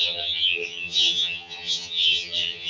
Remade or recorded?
remade